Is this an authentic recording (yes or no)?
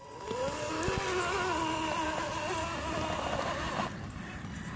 yes